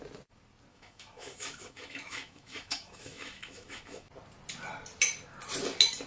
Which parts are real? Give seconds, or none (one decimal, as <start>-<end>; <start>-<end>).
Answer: 0.0-0.7; 4.1-6.1